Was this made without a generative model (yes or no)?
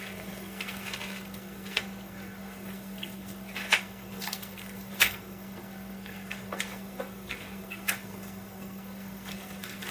no